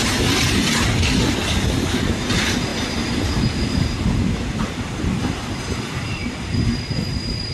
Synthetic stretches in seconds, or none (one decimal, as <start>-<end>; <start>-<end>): none

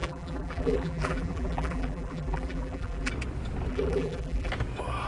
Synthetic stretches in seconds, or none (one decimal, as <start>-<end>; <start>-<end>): 0.0-3.1; 3.7-4.5

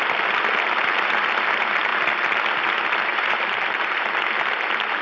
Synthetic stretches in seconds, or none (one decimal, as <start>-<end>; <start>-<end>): 3.1-4.2

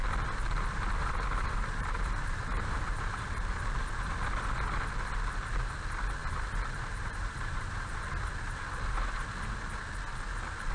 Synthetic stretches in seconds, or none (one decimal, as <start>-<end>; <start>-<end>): 1.0-3.4; 6.2-8.0

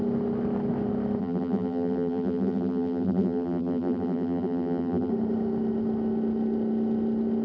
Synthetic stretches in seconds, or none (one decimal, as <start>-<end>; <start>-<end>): 1.2-5.1

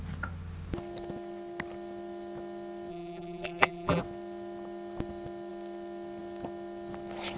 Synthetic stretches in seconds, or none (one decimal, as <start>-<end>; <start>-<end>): 2.9-4.0

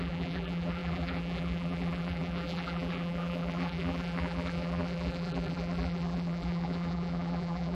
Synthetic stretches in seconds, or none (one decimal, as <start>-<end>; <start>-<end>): 0.0-7.7

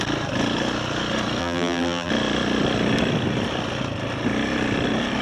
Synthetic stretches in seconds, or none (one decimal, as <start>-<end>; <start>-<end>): 1.4-2.1